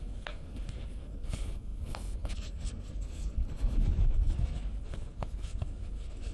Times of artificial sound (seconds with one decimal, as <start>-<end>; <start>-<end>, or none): 0.0-6.3